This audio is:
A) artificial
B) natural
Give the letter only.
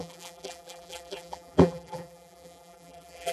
A